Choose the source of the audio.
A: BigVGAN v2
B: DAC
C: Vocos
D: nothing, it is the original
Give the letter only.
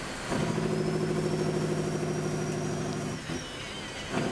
D